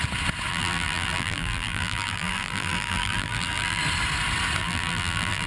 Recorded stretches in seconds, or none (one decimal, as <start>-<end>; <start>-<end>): 0.0-0.5; 3.8-4.6